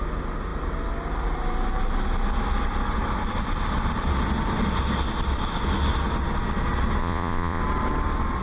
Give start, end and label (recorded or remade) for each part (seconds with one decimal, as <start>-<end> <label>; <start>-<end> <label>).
0.0-7.0 recorded; 7.0-7.6 remade; 7.6-8.4 recorded